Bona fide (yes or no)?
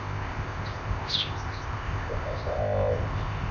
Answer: no